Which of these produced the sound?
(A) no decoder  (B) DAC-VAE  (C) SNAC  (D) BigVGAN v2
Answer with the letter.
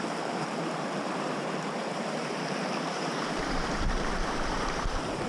D